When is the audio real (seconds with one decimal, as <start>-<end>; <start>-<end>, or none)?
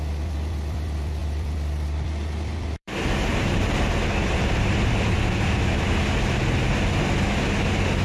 0.0-1.2; 5.9-8.0